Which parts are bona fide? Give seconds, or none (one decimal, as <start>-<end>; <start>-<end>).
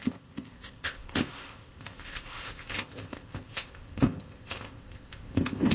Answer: none